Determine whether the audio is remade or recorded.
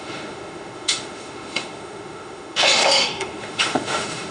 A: remade